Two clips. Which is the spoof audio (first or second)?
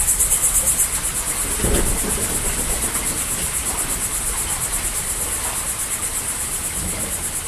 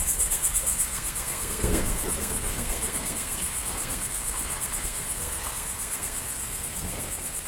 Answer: second